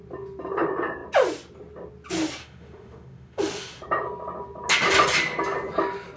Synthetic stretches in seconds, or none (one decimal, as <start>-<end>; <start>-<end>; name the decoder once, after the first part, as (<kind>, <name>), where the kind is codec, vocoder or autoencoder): 2.4-3.8 (autoencoder, DAC-VAE)